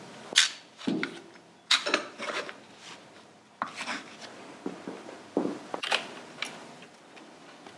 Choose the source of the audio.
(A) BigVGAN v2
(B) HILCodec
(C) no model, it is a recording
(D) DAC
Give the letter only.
C